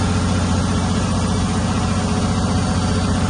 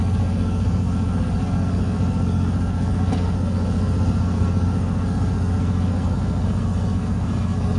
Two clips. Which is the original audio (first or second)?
first